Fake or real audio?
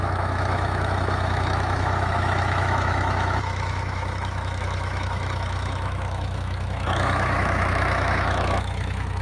fake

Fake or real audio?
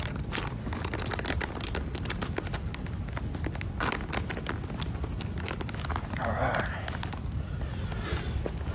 real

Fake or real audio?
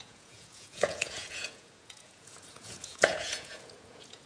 fake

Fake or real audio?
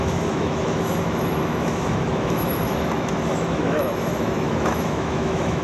fake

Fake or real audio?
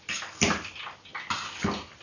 real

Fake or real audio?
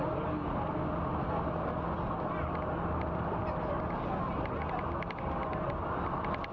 real